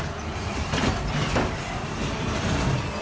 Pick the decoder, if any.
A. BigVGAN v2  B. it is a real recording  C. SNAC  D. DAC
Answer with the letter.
A